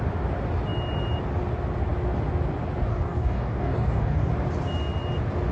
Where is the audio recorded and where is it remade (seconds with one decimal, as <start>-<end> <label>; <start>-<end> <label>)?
0.0-2.9 recorded; 2.9-4.3 remade; 4.3-5.5 recorded